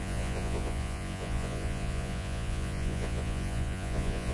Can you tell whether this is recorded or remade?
remade